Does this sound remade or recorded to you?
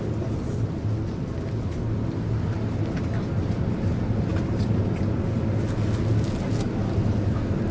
recorded